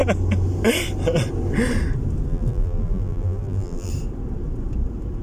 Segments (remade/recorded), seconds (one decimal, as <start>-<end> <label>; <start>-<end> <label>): 0.0-2.3 recorded; 2.3-3.9 remade; 3.9-5.2 recorded